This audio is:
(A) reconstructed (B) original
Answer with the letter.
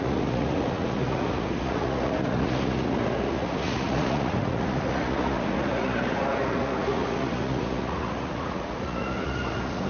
A